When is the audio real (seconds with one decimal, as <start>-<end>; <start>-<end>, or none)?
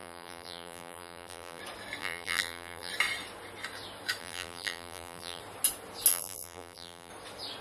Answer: 1.6-2.0; 2.9-4.2; 5.4-6.1; 7.1-7.6